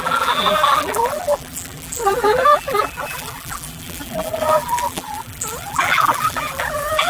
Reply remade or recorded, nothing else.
remade